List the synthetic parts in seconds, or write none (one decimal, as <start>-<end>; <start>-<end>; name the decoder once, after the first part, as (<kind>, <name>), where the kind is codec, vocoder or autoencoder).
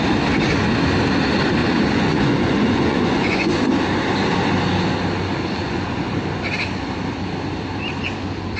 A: 1.6-3.5 (vocoder, Vocos); 5.6-6.1